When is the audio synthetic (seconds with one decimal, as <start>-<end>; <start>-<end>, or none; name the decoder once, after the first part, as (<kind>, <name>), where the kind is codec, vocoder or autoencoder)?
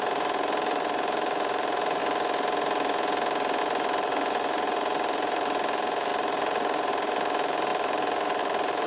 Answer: 0.0-2.0 (vocoder, BigVGAN v2); 3.6-8.9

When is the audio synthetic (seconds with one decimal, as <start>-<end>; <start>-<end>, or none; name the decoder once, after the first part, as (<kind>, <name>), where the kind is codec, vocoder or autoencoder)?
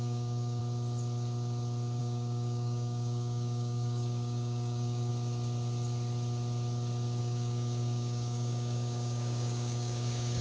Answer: 0.0-0.6 (codec, DAC); 2.0-5.1; 7.2-10.4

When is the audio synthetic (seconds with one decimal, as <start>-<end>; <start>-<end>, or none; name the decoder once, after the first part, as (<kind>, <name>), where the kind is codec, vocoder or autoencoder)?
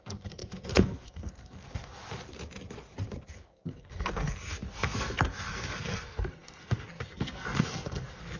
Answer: 0.0-2.0 (codec, SNAC); 3.3-8.4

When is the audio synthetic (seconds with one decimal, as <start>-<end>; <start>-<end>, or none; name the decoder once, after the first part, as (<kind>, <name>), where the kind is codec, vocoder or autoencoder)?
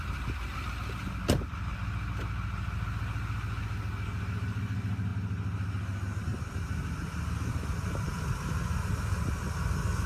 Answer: none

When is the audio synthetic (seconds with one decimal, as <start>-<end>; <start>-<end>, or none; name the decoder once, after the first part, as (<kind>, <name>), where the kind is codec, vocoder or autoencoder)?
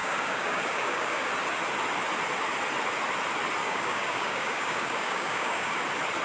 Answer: 0.0-1.3 (codec, DAC); 3.6-5.8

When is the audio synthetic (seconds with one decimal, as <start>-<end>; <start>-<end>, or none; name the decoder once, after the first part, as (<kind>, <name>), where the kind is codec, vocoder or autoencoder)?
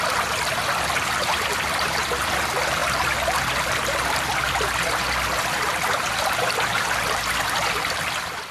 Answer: none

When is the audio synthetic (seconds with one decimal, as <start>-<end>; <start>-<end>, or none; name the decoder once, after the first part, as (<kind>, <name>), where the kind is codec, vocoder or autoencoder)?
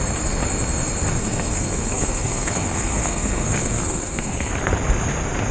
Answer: 1.2-4.5 (codec, SNAC)